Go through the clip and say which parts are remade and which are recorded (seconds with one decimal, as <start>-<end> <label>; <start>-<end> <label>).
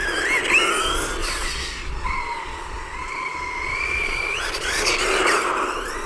0.0-1.2 recorded; 1.2-4.9 remade; 4.9-6.1 recorded